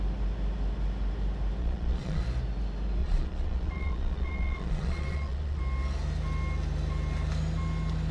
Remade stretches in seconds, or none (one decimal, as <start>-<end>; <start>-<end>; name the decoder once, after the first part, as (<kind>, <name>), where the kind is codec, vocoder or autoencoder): 1.6-2.2 (vocoder, Vocos); 3.0-5.6